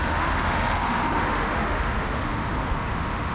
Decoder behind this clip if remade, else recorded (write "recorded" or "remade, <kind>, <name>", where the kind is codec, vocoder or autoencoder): remade, autoencoder, DAC-VAE